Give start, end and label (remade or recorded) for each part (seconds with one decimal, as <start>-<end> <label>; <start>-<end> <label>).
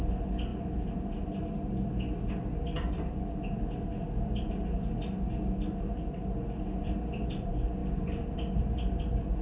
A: 0.0-9.4 recorded